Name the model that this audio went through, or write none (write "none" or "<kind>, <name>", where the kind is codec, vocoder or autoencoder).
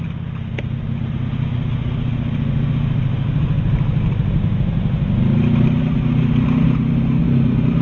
none